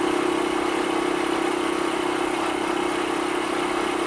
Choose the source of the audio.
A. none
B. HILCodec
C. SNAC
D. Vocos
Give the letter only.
A